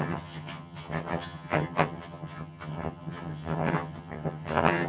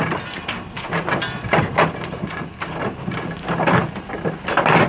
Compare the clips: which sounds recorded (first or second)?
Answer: second